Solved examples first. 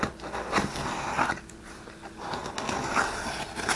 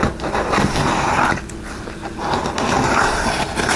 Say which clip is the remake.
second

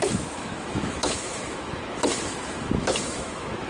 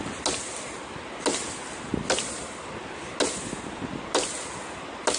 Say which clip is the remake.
first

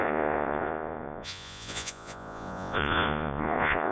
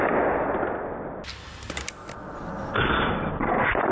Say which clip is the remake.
first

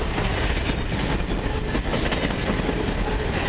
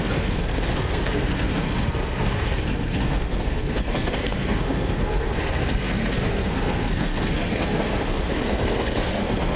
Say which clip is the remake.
second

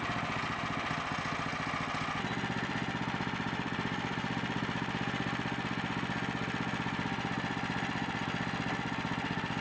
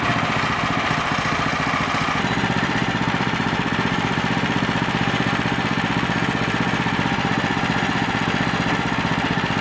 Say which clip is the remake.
second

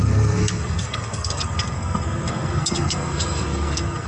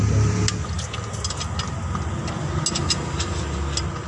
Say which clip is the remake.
first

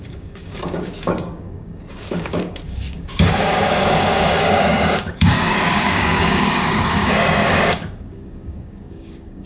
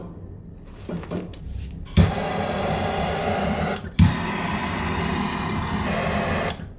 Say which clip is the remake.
first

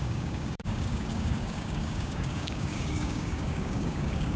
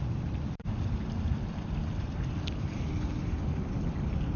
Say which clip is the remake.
first